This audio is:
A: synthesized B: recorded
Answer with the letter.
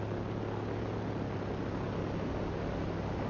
B